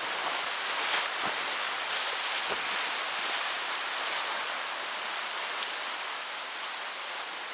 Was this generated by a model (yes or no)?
no